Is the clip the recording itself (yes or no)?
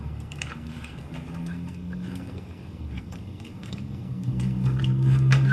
no